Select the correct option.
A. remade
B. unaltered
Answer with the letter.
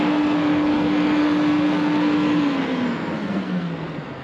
A